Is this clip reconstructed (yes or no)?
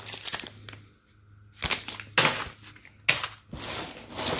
no